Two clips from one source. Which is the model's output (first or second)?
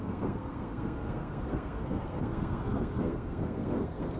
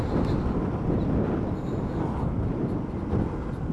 first